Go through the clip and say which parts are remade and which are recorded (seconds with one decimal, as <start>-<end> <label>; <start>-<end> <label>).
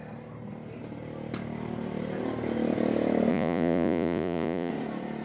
0.0-3.3 recorded; 3.3-4.7 remade; 4.7-5.2 recorded